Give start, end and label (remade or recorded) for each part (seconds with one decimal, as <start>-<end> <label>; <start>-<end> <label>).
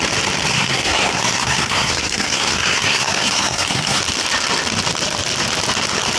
0.0-0.5 recorded; 0.5-4.0 remade; 4.0-6.2 recorded